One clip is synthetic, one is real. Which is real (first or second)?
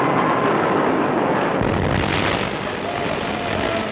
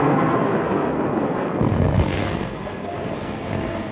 first